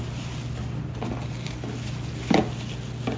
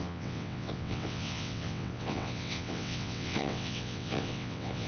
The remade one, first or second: second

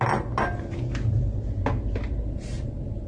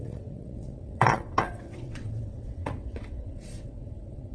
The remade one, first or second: second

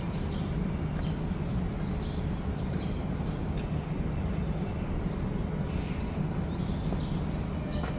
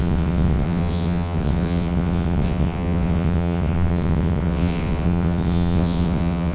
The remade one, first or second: second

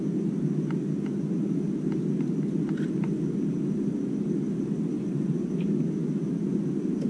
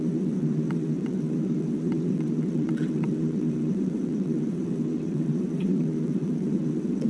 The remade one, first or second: second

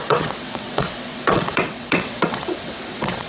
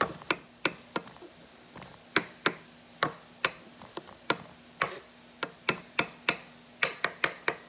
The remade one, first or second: first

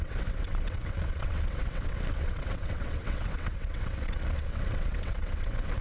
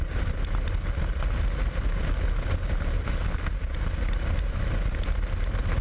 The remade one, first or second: first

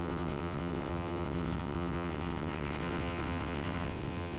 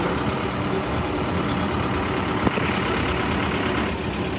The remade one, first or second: first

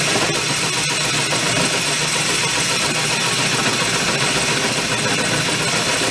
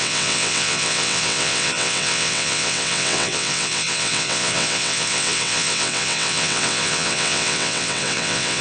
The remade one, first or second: second